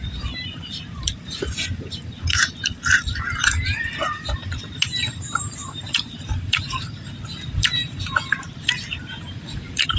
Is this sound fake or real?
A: fake